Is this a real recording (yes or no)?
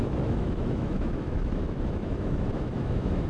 no